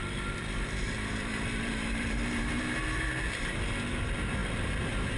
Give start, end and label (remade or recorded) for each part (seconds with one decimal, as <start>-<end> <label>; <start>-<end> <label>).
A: 0.0-3.1 remade; 3.1-4.4 recorded; 4.4-5.2 remade